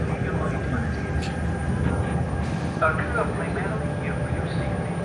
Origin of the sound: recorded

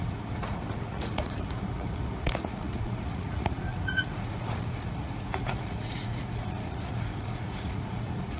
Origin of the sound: remade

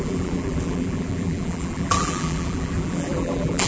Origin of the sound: remade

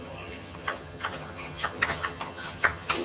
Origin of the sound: remade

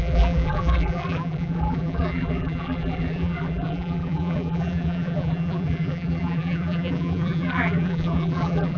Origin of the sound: remade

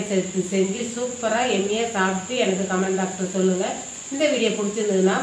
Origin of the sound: remade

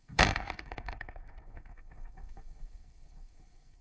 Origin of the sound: remade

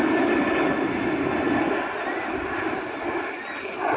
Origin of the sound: recorded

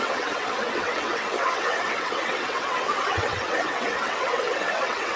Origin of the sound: remade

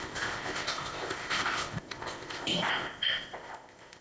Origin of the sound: remade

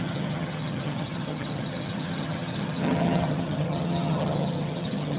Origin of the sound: remade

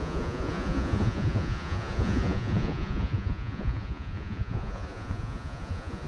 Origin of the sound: remade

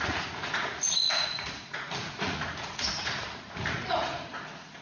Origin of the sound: remade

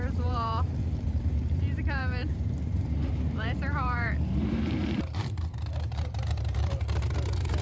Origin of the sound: remade